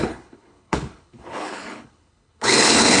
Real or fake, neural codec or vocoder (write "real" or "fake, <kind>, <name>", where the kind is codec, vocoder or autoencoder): fake, codec, HILCodec